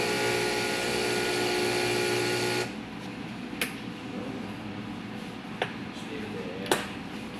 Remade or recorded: recorded